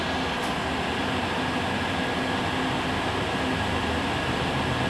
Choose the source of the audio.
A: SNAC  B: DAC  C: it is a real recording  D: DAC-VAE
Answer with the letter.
C